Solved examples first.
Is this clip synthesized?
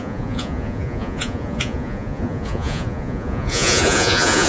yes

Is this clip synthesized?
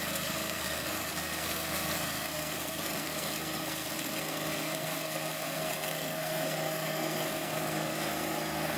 yes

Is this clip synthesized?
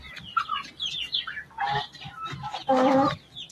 no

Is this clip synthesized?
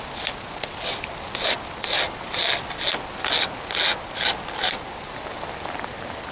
no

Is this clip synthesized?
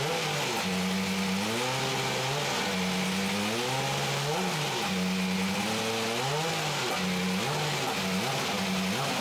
no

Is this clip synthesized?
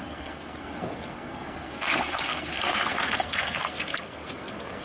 yes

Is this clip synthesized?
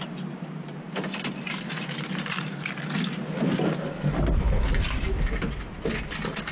no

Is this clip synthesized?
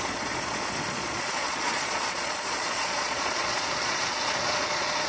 yes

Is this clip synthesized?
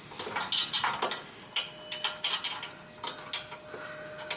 no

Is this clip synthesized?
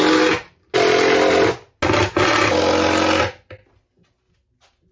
no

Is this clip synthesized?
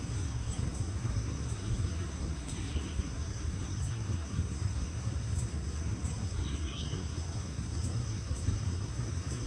yes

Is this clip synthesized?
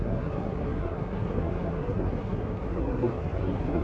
yes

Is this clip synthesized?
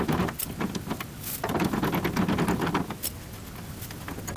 no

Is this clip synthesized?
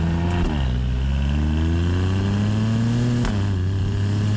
no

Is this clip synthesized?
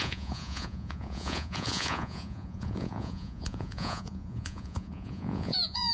yes